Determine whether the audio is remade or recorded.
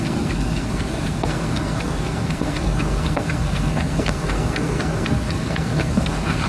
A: remade